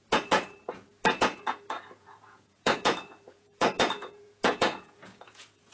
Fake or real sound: fake